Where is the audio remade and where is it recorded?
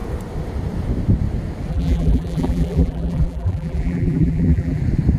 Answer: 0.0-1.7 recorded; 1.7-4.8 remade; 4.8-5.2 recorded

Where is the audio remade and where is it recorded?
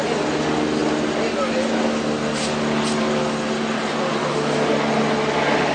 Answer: 0.0-5.7 recorded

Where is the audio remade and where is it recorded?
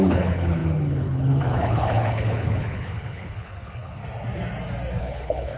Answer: 0.0-4.0 remade; 4.0-5.0 recorded; 5.0-5.6 remade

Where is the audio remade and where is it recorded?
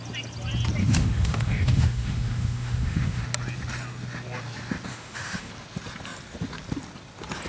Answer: 0.0-0.8 recorded; 0.8-3.2 remade; 3.2-4.9 recorded; 4.9-5.5 remade; 5.5-7.5 recorded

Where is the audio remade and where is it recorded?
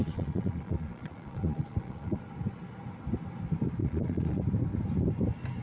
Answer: 0.0-2.2 remade; 2.2-3.8 recorded; 3.8-4.4 remade; 4.4-5.6 recorded